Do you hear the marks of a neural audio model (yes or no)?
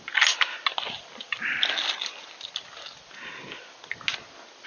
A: no